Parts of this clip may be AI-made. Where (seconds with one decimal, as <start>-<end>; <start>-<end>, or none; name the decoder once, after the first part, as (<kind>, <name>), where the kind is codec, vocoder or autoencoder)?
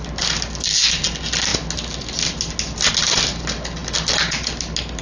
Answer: none